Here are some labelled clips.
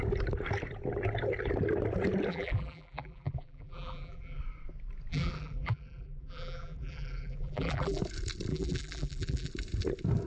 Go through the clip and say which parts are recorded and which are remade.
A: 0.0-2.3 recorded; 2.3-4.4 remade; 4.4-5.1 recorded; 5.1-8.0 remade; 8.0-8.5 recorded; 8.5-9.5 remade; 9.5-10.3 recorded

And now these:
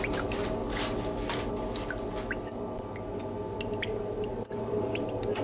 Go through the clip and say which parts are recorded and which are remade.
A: 0.0-0.6 remade; 0.6-3.8 recorded; 3.8-5.4 remade

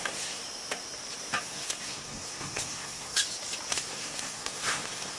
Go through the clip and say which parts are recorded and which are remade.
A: 0.0-0.4 remade; 0.4-1.4 recorded; 1.4-3.2 remade; 3.2-3.7 recorded; 3.7-5.2 remade

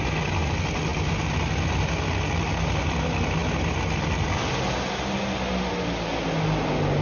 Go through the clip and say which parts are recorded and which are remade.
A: 0.0-7.0 recorded

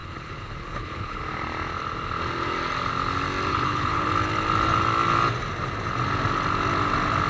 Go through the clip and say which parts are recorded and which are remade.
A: 0.0-1.2 remade; 1.2-3.5 recorded; 3.5-4.1 remade; 4.1-7.3 recorded